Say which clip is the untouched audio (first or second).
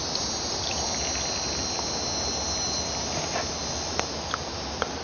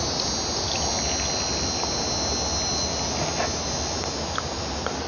second